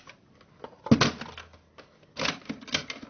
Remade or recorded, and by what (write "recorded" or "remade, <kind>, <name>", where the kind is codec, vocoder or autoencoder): recorded